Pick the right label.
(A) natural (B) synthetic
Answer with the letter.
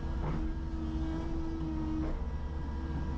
A